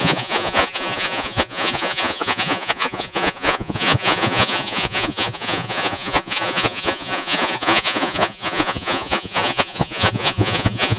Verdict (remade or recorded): remade